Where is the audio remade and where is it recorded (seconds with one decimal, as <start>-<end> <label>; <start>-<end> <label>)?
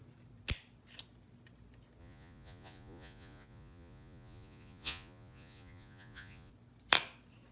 0.0-2.0 recorded; 2.0-6.5 remade; 6.5-7.5 recorded